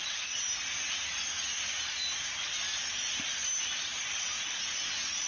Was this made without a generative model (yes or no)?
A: yes